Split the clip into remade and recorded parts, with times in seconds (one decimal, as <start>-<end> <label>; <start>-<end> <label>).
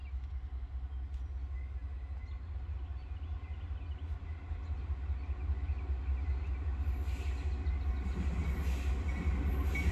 0.0-9.9 recorded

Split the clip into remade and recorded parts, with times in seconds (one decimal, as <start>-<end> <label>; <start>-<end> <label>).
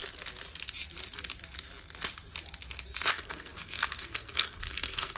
0.0-3.1 recorded; 3.1-5.2 remade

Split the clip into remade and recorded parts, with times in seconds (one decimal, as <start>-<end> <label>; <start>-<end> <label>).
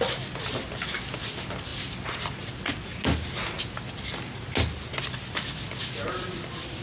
0.0-1.7 recorded; 1.7-2.7 remade; 2.7-6.8 recorded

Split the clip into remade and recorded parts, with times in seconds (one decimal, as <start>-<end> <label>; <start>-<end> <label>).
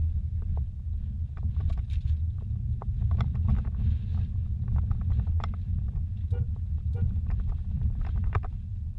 0.0-0.5 remade; 0.5-1.4 recorded; 1.4-4.4 remade; 4.4-5.2 recorded; 5.2-9.0 remade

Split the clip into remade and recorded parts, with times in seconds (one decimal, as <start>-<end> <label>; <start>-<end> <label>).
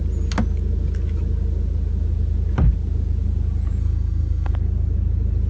0.0-3.8 recorded; 3.8-4.5 remade; 4.5-5.5 recorded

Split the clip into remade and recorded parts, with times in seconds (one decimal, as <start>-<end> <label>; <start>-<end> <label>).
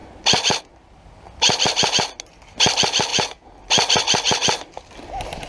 0.0-5.5 recorded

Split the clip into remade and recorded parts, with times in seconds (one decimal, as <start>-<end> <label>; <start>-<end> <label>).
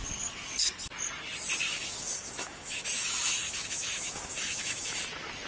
0.0-1.7 recorded; 1.7-5.0 remade; 5.0-5.5 recorded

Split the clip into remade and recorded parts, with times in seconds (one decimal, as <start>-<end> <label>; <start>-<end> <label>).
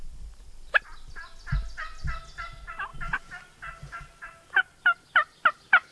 0.0-5.9 recorded